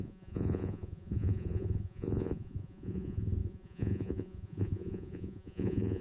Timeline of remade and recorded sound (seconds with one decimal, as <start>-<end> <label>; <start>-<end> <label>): 0.0-6.0 remade